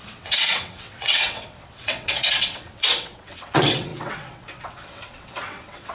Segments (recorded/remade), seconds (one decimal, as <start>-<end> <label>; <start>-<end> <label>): 0.0-5.9 remade